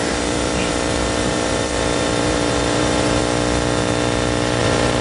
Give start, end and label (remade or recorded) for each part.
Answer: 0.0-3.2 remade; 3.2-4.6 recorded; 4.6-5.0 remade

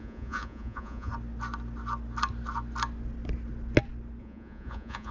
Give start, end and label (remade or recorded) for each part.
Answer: 0.0-1.1 remade; 1.1-4.2 recorded; 4.2-5.1 remade